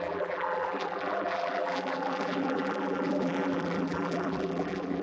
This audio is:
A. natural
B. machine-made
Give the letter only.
B